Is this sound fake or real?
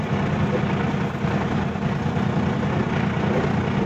real